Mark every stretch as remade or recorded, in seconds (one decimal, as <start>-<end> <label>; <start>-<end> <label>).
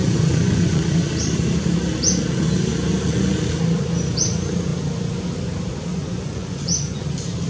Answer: 0.0-1.1 remade; 1.1-5.9 recorded; 5.9-7.1 remade; 7.1-7.5 recorded